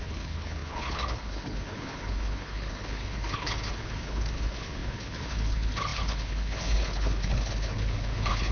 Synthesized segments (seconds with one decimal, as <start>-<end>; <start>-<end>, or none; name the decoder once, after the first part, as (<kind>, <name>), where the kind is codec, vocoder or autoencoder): 0.0-8.5 (codec, HILCodec)

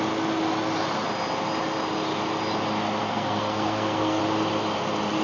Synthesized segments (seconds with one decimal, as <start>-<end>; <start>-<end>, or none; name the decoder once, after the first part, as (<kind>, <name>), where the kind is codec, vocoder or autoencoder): 3.0-4.2 (codec, SNAC)

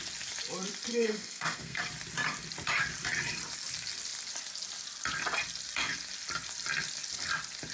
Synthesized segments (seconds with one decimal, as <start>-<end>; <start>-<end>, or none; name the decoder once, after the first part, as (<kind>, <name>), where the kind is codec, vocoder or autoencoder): 0.9-1.8 (codec, SNAC)

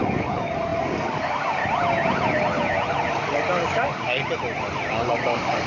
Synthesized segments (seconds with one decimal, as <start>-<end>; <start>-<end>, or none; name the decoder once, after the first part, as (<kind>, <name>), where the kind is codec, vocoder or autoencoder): 0.0-1.6 (codec, DAC); 3.1-4.2; 4.9-5.7